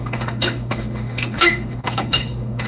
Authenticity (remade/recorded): remade